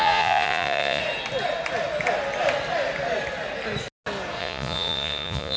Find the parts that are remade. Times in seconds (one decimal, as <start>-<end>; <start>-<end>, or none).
0.0-1.0; 4.4-5.6